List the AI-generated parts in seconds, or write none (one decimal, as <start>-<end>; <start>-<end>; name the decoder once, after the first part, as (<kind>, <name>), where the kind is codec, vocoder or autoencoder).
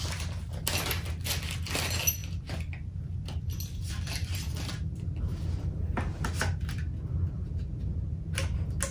none